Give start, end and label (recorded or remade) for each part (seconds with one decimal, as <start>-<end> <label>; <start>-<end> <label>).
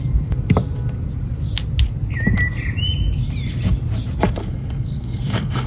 0.0-4.4 recorded; 4.4-5.7 remade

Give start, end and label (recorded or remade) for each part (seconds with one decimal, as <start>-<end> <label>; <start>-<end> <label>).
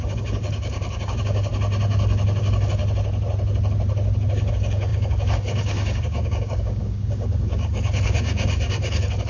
0.0-1.5 remade; 1.5-2.4 recorded; 2.4-2.8 remade; 2.8-4.5 recorded; 4.5-9.3 remade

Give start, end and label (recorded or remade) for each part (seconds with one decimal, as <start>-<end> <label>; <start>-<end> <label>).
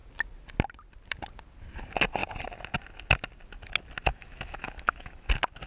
0.0-4.1 recorded; 4.1-5.3 remade; 5.3-5.7 recorded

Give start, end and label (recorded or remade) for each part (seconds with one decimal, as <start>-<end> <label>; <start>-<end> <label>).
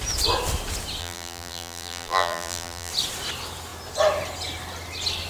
0.0-1.0 recorded; 1.0-2.9 remade; 2.9-5.3 recorded